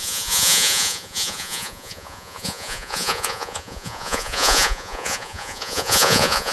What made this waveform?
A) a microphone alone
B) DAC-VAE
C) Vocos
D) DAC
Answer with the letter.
C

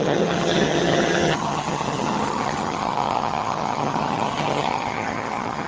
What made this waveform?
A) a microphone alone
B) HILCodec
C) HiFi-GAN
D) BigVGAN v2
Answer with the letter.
C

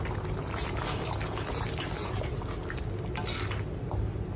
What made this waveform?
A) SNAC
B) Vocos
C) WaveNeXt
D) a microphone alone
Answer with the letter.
D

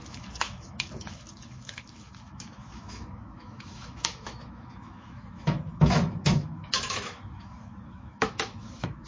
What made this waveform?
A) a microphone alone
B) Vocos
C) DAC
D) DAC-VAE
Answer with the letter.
D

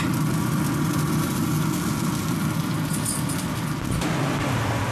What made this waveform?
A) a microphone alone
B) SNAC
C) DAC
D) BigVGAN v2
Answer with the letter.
A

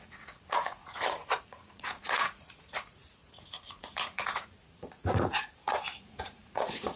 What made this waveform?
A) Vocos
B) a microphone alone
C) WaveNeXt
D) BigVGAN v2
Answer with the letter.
A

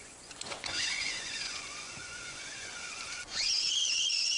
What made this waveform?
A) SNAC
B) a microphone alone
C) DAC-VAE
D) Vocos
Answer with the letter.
D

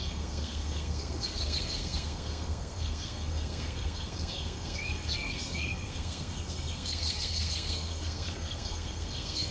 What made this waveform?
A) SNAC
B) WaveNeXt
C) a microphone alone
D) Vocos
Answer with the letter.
A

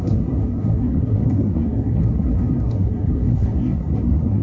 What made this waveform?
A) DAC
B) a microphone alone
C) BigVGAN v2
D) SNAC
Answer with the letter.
D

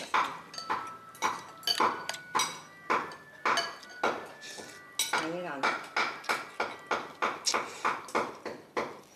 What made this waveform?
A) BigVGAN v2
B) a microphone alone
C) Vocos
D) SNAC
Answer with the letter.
B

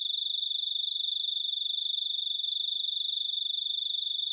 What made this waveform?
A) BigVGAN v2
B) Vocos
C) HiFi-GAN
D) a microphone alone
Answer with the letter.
D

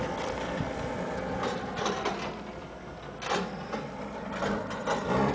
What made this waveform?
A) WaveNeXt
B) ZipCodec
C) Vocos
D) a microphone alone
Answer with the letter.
D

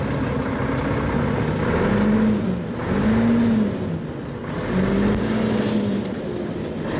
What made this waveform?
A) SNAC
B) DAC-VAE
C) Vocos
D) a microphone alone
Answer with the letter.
D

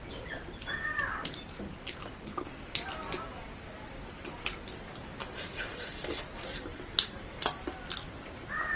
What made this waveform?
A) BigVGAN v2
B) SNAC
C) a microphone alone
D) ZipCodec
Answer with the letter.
C